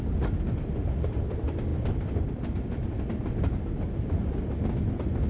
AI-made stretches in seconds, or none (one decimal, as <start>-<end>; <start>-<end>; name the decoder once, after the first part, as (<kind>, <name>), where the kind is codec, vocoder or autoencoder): none